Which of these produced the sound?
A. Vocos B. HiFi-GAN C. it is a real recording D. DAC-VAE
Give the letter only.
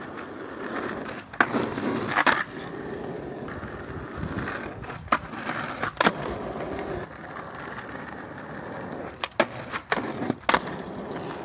C